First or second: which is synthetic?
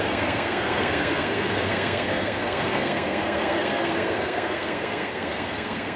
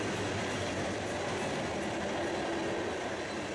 first